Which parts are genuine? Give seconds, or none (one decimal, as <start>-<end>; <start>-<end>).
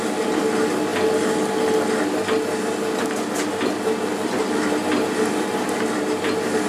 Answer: 0.0-6.7